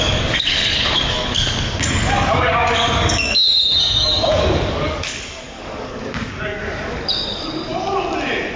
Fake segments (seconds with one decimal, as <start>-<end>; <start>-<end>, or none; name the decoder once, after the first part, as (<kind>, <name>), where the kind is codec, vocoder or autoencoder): 0.0-7.7 (codec, DAC)